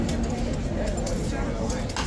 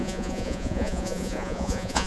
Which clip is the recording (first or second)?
first